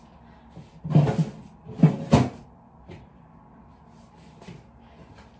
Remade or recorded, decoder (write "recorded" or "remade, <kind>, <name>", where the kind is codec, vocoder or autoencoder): recorded